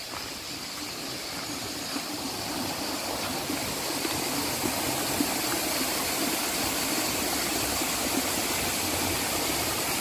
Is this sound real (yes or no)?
yes